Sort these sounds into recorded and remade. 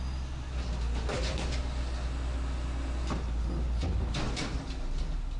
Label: recorded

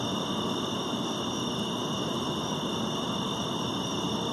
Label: recorded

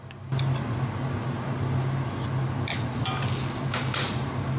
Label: recorded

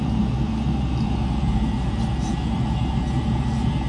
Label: remade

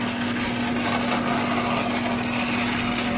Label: recorded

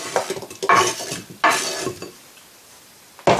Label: recorded